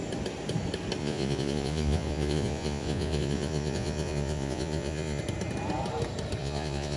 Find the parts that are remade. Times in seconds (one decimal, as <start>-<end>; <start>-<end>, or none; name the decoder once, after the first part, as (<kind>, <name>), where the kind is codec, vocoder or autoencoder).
1.0-5.2 (vocoder, Vocos); 6.4-7.0